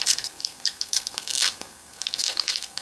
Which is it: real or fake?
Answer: fake